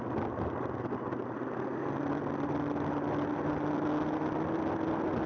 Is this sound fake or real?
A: real